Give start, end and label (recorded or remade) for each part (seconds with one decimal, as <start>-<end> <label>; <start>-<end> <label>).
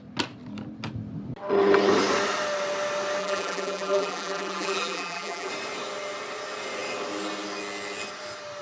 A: 0.0-3.2 recorded; 3.2-5.5 remade; 5.5-8.6 recorded